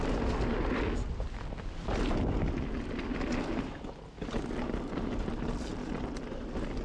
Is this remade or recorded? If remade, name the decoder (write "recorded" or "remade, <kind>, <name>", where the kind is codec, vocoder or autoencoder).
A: recorded